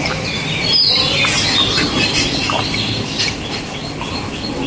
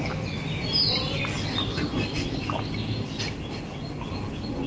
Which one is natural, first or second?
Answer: second